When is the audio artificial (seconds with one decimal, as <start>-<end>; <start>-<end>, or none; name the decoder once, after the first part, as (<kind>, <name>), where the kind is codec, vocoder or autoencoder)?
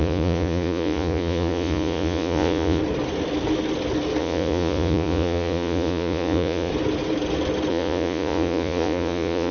0.0-2.8 (vocoder, Vocos); 4.2-6.7; 7.7-9.5